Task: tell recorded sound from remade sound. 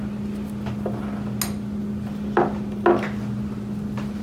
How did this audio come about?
recorded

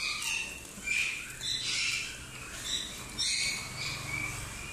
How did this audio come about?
recorded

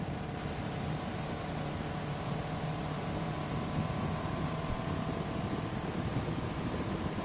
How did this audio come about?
remade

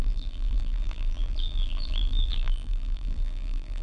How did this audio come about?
remade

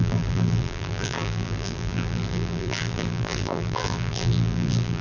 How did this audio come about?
remade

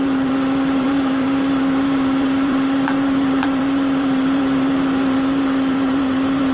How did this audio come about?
remade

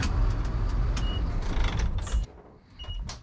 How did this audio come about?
remade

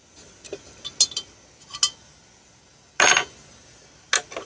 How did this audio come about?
recorded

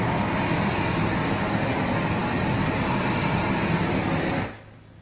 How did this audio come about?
recorded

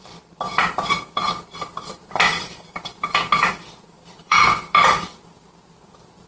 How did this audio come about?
remade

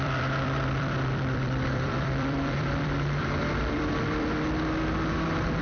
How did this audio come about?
remade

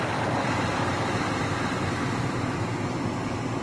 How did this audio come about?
remade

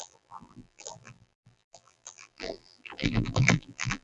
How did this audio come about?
remade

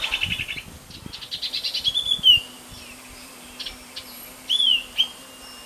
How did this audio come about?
recorded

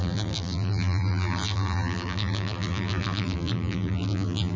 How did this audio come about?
remade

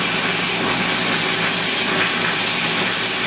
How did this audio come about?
recorded